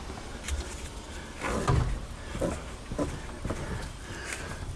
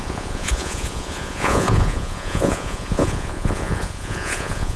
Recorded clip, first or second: first